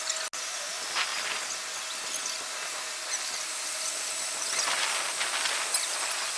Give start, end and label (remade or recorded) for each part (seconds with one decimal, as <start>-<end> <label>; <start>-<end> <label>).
0.0-6.4 recorded

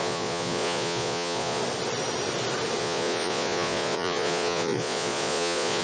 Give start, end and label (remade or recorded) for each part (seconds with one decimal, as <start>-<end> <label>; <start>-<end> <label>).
0.0-1.6 remade; 1.6-2.8 recorded; 2.8-5.8 remade

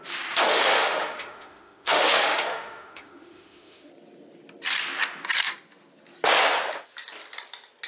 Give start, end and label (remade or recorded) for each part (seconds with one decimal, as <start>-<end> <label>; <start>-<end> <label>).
0.0-0.5 recorded; 0.5-3.9 remade; 3.9-7.9 recorded

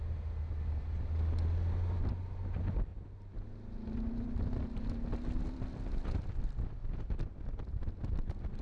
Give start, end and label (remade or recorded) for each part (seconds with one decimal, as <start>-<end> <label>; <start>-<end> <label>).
0.0-2.9 recorded; 2.9-6.3 remade; 6.3-6.8 recorded; 6.8-7.3 remade; 7.3-8.6 recorded

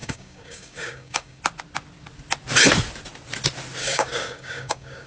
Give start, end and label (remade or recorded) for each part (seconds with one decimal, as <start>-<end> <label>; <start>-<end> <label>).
0.0-1.4 remade; 1.4-3.8 recorded; 3.8-5.1 remade